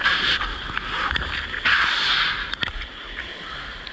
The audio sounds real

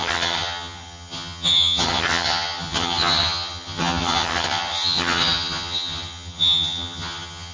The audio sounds fake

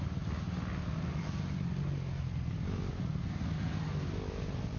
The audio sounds real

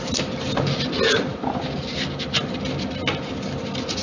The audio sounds real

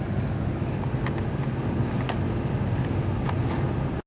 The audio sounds real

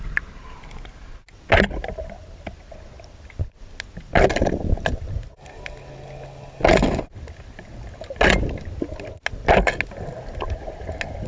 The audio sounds real